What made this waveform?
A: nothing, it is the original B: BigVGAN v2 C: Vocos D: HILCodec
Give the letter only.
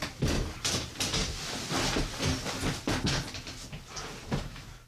A